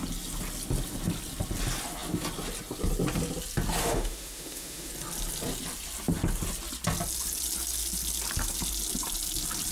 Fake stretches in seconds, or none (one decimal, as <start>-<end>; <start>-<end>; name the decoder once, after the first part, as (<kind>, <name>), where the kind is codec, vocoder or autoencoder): 3.8-4.9 (autoencoder, DAC-VAE)